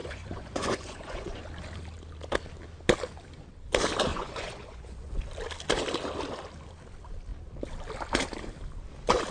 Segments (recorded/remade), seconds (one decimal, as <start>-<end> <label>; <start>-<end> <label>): 0.0-1.4 remade; 1.4-4.1 recorded; 4.1-5.1 remade; 5.1-9.3 recorded